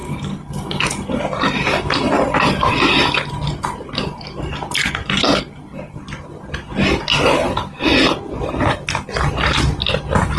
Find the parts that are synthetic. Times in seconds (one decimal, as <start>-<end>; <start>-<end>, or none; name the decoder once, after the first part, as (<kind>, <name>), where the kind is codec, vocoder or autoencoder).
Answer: none